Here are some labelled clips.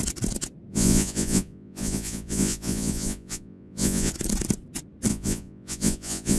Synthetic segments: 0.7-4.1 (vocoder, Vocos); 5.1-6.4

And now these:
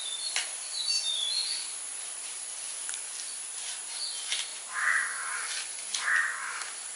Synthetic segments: none

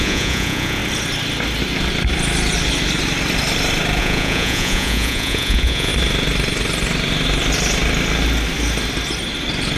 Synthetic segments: 0.0-0.8 (vocoder, Vocos); 4.0-5.9